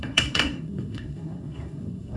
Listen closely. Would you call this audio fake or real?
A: fake